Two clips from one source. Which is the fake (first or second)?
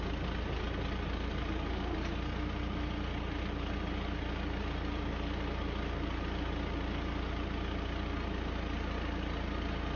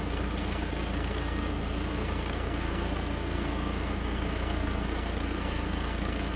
second